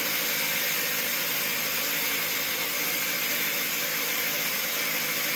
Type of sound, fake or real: real